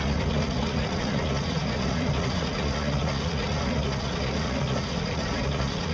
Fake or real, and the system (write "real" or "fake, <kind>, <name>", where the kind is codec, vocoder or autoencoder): fake, vocoder, Vocos